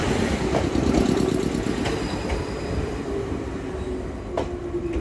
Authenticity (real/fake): real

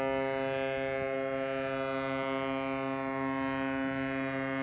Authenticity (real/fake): real